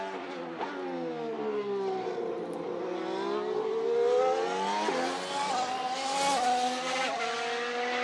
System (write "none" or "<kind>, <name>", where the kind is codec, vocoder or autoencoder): none